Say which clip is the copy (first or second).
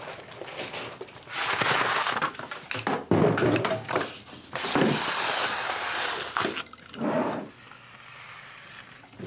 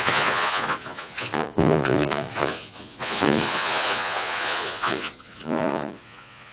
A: second